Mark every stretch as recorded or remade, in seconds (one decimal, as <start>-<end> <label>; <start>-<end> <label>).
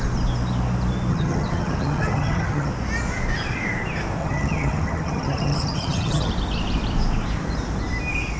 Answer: 0.0-1.1 recorded; 1.1-2.7 remade; 2.7-4.2 recorded; 4.2-6.3 remade; 6.3-8.4 recorded